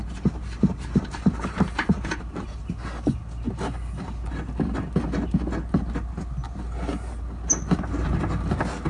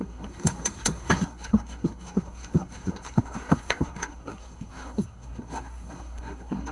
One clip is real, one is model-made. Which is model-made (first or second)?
second